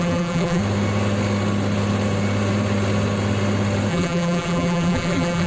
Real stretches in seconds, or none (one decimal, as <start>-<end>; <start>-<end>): 0.6-3.9